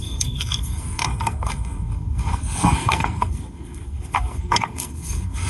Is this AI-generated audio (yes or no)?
yes